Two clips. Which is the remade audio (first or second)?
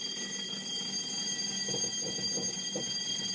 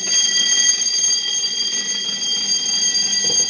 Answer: first